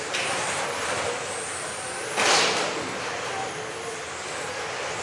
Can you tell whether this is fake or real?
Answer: real